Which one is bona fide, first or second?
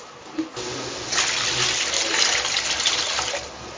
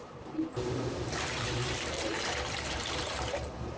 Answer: first